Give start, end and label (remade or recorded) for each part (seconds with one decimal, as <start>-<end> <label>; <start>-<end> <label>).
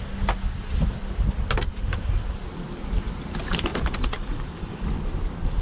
0.0-5.6 recorded